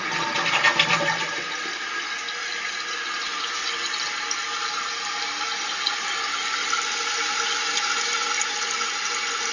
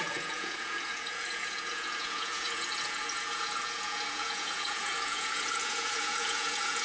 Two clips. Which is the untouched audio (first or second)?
first